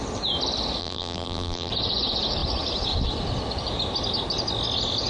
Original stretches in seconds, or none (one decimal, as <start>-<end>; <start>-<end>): 0.0-0.8; 1.7-5.1